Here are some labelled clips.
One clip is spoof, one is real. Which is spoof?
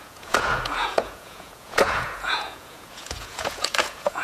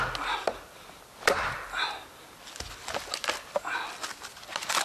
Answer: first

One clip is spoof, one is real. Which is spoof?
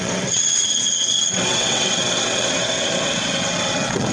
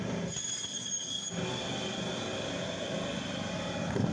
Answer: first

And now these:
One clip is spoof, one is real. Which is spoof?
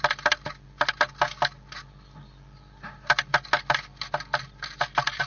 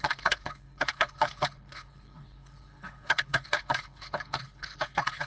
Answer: second